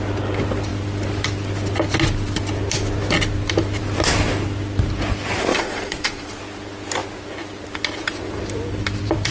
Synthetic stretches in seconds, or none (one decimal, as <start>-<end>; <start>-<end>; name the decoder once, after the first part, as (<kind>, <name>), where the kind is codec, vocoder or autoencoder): 5.5-6.4 (vocoder, Vocos)